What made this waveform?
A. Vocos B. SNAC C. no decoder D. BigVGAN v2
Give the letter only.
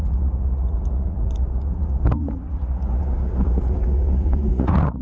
A